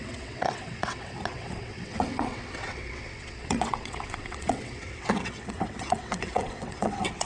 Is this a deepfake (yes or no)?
yes